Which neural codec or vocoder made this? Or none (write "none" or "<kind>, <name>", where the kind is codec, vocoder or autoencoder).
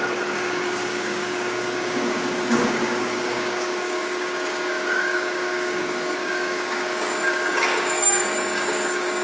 codec, DAC